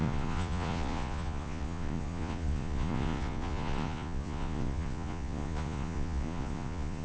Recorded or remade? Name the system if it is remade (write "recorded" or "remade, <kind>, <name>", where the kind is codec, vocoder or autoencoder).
remade, vocoder, Vocos